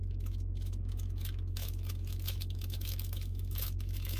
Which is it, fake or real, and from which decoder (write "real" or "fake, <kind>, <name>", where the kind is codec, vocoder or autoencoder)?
fake, autoencoder, DAC-VAE